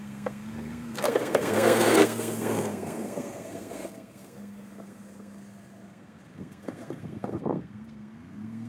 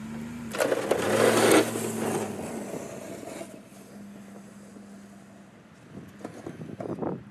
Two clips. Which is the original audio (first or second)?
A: second